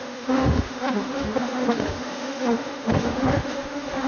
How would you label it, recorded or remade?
remade